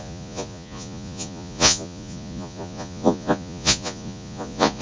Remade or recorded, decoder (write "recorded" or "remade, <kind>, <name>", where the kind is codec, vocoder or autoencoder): remade, vocoder, Vocos